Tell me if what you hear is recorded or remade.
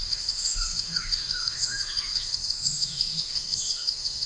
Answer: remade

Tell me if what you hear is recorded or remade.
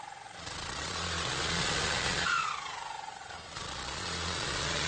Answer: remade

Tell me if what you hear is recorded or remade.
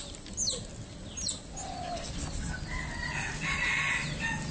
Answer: recorded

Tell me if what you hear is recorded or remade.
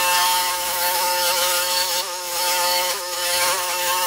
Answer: remade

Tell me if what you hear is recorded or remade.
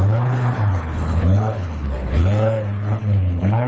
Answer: remade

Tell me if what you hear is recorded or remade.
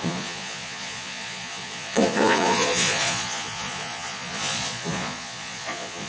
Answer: remade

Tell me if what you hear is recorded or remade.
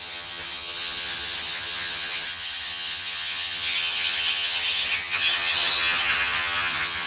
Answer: remade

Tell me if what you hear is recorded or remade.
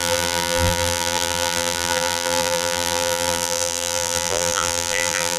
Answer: remade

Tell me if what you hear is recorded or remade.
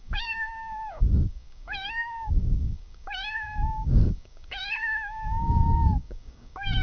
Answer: remade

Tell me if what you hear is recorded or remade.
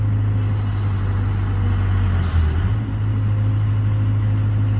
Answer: recorded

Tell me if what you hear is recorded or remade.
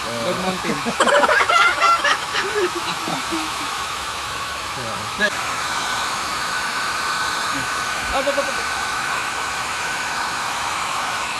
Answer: remade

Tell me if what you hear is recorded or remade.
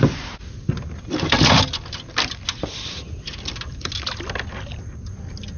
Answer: recorded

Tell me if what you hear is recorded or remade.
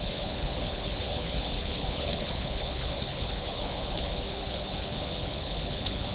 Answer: remade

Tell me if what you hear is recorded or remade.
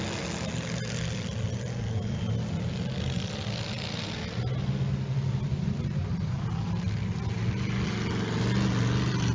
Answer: recorded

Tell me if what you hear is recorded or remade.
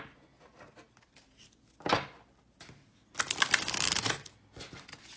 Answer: recorded